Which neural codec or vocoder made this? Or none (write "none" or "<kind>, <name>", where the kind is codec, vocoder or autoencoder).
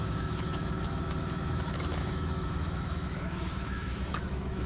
autoencoder, DAC-VAE